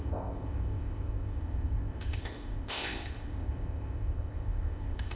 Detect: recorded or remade remade